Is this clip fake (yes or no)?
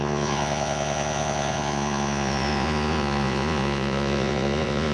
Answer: yes